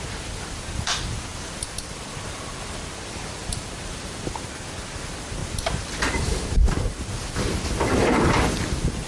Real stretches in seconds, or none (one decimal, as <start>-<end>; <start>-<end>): 0.0-5.4; 6.4-9.1